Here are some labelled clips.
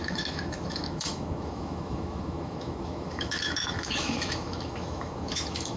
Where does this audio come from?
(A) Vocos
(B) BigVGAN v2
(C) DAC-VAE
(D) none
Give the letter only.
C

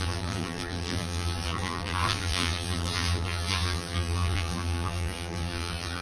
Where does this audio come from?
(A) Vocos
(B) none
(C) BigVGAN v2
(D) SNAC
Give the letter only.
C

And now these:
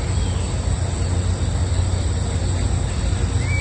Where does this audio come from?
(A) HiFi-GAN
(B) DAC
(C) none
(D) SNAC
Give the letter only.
C